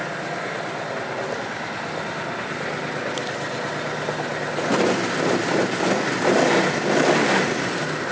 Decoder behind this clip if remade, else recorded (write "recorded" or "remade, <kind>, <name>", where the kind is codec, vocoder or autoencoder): recorded